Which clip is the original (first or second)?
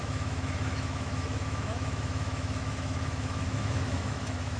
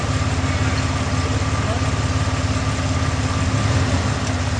second